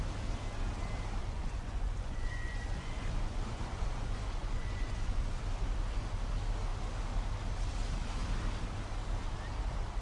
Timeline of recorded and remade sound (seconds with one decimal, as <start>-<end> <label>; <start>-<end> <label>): 0.0-1.2 recorded; 1.2-5.4 remade; 5.4-10.0 recorded

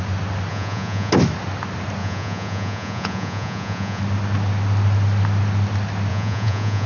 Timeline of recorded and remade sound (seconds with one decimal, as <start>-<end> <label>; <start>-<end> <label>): 0.0-0.5 recorded; 0.5-1.1 remade; 1.1-2.0 recorded; 2.0-4.0 remade; 4.0-6.1 recorded; 6.1-6.9 remade

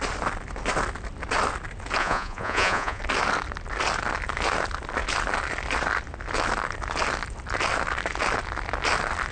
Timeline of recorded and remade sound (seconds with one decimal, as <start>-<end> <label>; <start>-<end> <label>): 0.0-2.0 recorded; 2.0-3.0 remade; 3.0-9.3 recorded

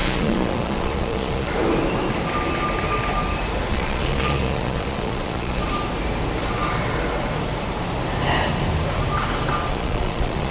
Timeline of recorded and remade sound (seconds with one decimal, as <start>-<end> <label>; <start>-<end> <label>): 0.0-1.5 remade; 1.5-3.7 recorded; 3.7-5.6 remade; 5.6-9.7 recorded; 9.7-10.5 remade

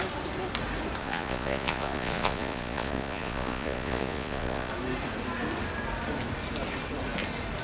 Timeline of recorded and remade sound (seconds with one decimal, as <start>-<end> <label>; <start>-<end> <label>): 0.0-1.0 recorded; 1.0-4.7 remade; 4.7-7.6 recorded

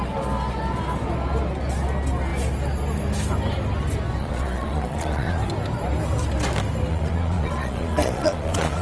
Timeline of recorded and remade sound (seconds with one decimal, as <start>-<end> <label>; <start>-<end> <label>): 0.0-4.2 recorded; 4.2-5.4 remade; 5.4-6.9 recorded; 6.9-8.8 remade

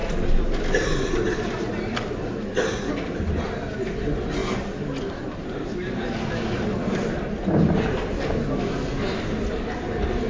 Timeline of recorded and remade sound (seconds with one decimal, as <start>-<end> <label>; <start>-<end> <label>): 0.0-10.3 recorded

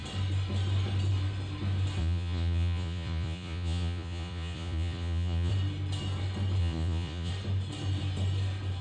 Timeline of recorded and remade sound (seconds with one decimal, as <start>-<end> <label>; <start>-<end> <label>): 0.0-2.0 recorded; 2.0-5.5 remade; 5.5-6.6 recorded; 6.6-7.3 remade; 7.3-8.8 recorded